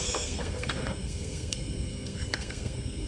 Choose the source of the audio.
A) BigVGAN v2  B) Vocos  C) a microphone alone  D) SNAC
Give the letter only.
D